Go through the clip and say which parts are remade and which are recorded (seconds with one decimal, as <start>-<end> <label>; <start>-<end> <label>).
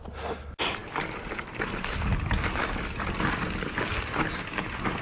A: 0.0-5.0 recorded